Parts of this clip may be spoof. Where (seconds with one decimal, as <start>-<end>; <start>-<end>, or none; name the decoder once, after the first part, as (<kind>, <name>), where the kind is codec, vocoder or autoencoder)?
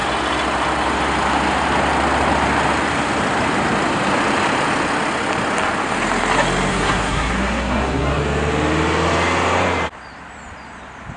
6.7-8.2 (codec, SNAC)